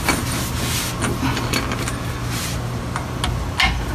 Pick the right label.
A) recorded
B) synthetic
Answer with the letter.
A